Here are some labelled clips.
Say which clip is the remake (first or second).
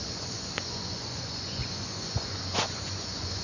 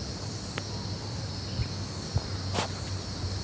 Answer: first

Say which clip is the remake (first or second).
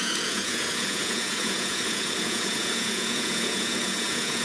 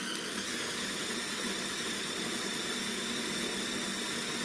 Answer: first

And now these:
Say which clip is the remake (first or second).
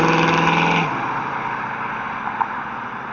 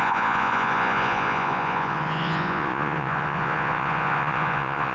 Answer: second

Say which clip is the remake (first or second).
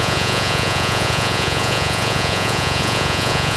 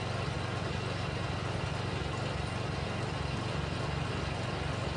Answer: first